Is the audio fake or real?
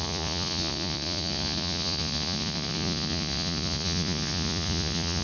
fake